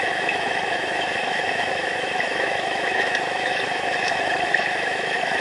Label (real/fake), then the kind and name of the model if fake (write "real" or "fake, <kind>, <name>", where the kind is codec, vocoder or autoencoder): fake, autoencoder, DAC-VAE